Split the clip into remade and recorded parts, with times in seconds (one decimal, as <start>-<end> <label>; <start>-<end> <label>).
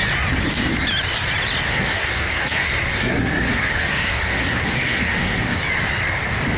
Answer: 0.0-1.7 recorded; 1.7-5.6 remade; 5.6-6.6 recorded